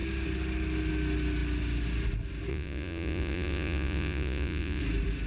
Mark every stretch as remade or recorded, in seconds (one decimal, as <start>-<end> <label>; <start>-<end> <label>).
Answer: 0.0-2.5 recorded; 2.5-4.8 remade; 4.8-5.3 recorded